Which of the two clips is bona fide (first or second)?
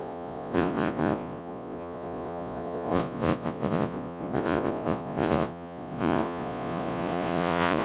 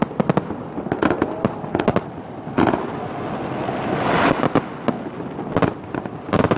second